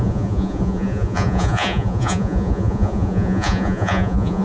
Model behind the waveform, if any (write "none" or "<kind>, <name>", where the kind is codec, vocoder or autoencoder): vocoder, Vocos